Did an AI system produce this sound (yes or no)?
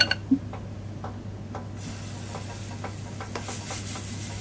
no